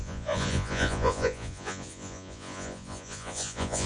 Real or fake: fake